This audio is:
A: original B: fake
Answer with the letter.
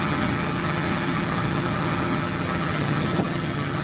B